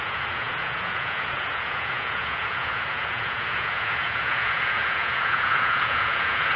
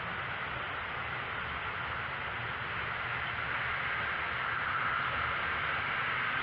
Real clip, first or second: second